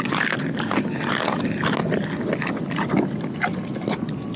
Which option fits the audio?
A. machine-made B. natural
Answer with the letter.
B